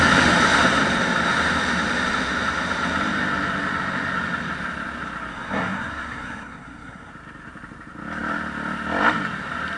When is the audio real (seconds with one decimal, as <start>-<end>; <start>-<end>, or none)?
0.0-5.3; 7.1-9.8

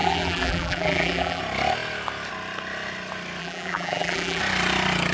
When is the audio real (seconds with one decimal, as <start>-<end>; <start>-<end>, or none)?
1.4-3.4; 4.4-5.1

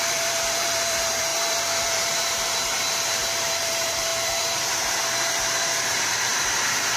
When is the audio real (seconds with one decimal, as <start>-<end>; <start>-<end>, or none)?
none

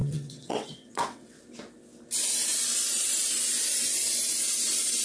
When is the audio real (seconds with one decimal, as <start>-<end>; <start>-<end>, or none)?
1.4-5.0

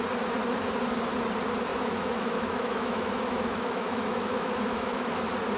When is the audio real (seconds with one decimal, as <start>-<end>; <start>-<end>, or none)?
0.0-1.7; 5.1-5.6

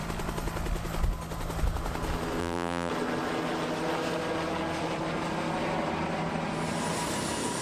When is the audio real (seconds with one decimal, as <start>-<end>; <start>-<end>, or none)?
0.0-2.4; 2.9-7.6

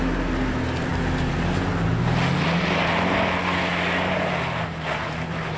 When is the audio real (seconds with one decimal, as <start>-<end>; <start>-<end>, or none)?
0.0-5.6

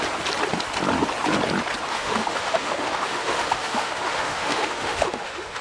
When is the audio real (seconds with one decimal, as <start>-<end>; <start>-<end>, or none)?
0.0-1.9